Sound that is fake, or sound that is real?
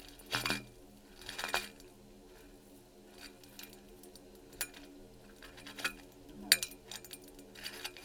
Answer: real